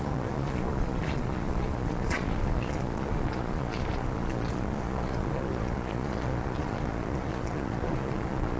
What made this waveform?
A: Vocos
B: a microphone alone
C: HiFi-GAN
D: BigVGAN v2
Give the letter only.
A